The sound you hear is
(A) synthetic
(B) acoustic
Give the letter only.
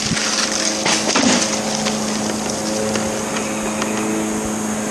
B